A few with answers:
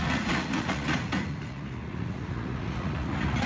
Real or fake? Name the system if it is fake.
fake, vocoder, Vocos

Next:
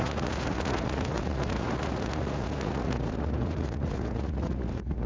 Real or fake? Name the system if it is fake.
fake, vocoder, Vocos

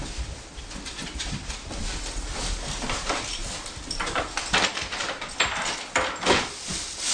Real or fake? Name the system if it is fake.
real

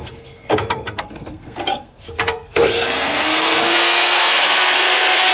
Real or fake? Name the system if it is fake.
fake, codec, SNAC